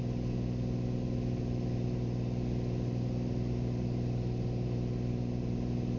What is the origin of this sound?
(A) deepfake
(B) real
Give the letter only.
B